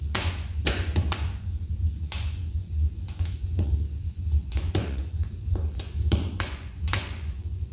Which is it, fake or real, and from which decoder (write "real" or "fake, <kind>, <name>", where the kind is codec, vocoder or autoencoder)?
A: fake, vocoder, Vocos